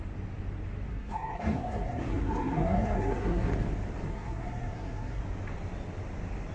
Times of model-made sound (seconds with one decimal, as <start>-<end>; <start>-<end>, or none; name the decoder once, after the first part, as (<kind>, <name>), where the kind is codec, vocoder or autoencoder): 0.9-3.5 (codec, SNAC); 4.1-5.2